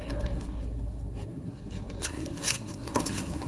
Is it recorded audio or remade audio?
remade